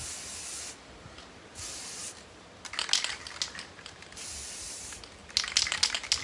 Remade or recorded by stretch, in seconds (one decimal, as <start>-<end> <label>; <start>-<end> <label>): 0.0-6.2 recorded